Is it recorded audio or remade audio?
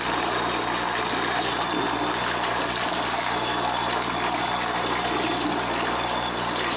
recorded